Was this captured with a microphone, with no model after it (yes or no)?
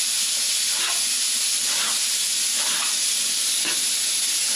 yes